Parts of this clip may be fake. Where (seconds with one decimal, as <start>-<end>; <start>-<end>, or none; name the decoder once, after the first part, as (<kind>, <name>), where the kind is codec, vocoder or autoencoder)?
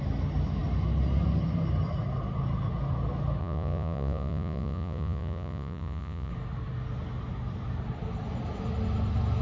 3.4-6.3 (vocoder, Vocos)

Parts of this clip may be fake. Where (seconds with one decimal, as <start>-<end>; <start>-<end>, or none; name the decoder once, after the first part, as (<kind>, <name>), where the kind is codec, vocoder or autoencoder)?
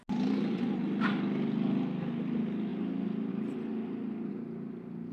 none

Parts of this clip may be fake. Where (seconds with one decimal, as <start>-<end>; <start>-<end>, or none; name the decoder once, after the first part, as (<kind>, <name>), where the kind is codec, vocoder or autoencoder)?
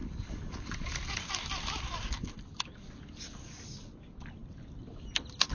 none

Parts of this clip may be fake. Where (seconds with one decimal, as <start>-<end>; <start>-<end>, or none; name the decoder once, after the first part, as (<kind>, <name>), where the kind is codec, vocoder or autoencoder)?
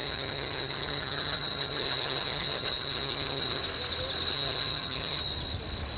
0.0-3.6 (vocoder, HiFi-GAN); 4.3-5.2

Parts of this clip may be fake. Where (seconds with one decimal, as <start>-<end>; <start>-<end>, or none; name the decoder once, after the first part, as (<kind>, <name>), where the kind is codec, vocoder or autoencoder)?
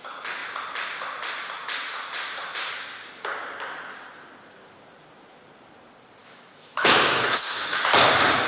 6.2-7.9 (autoencoder, DAC-VAE)